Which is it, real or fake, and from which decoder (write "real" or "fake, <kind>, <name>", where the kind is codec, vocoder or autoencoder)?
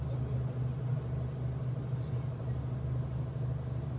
real